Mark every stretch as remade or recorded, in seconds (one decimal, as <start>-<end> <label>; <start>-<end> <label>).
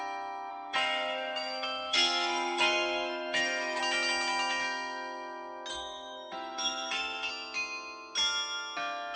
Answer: 0.0-0.5 recorded; 0.5-3.8 remade; 3.8-5.7 recorded; 5.7-7.3 remade; 7.3-9.2 recorded